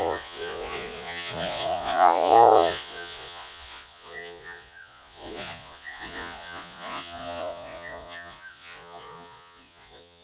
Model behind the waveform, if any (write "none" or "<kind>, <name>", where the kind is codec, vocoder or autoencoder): vocoder, Vocos